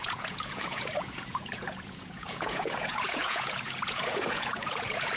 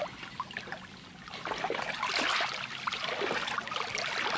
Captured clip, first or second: second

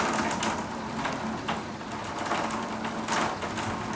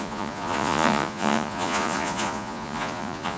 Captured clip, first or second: first